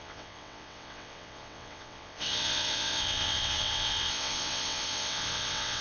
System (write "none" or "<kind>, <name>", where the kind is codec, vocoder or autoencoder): vocoder, WaveNeXt